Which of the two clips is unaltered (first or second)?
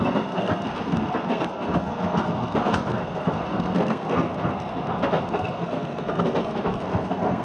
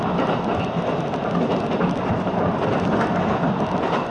second